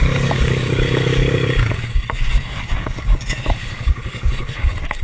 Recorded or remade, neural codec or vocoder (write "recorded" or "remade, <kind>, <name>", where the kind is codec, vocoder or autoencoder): remade, codec, DAC